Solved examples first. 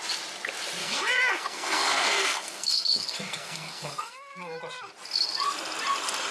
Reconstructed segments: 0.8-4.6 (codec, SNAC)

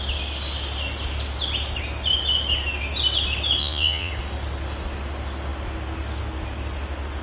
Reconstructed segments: 3.6-4.1 (vocoder, Vocos)

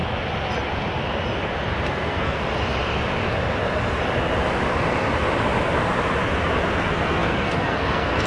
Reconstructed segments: 1.9-2.4 (codec, SNAC); 6.8-8.3

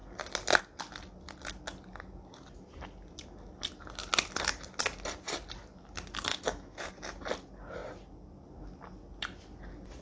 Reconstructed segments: 6.3-6.9 (autoencoder, DAC-VAE)

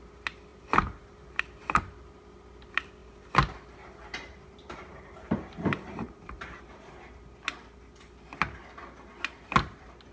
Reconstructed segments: 0.5-1.4 (vocoder, BigVGAN v2); 3.0-6.6

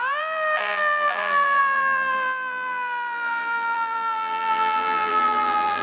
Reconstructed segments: 0.0-5.8 (vocoder, BigVGAN v2)